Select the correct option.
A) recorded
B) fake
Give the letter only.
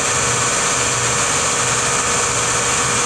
A